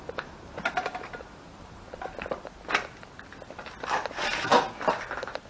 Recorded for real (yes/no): yes